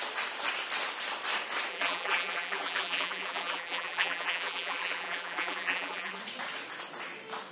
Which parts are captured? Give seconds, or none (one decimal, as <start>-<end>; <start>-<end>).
0.0-1.7; 6.2-7.5